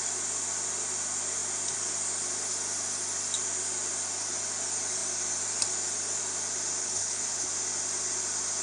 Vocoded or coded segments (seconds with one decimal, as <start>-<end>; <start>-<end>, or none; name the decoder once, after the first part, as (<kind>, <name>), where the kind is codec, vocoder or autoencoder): 6.8-7.5 (codec, HILCodec)